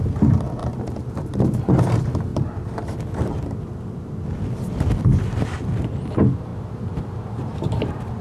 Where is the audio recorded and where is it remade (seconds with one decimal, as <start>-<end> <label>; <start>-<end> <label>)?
0.0-0.6 recorded; 0.6-1.6 remade; 1.6-2.3 recorded; 2.3-3.7 remade; 3.7-6.5 recorded; 6.5-8.2 remade